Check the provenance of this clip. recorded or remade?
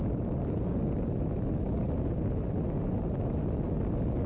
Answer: recorded